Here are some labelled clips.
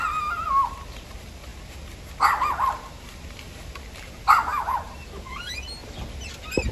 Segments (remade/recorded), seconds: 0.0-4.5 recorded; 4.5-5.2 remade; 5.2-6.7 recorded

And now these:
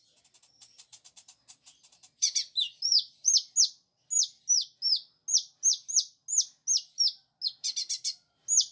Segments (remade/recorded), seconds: 0.0-2.9 recorded; 2.9-3.5 remade; 3.5-8.7 recorded

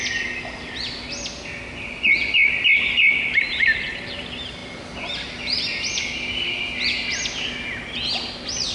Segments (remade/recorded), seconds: 0.0-8.7 recorded

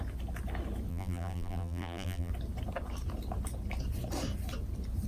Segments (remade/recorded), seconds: 0.0-0.9 recorded; 0.9-2.3 remade; 2.3-5.1 recorded

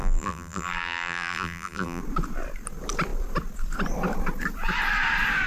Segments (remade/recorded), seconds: 0.0-2.0 remade; 2.0-5.5 recorded

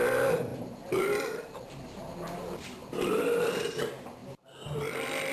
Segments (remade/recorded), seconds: 0.0-0.5 recorded; 0.5-1.8 remade; 1.8-2.8 recorded; 2.8-3.8 remade; 3.8-5.3 recorded